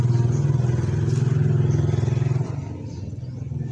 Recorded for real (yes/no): yes